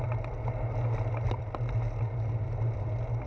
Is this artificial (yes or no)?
no